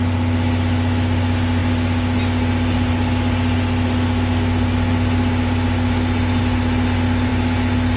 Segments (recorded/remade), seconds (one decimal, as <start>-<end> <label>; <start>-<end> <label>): 0.0-8.0 recorded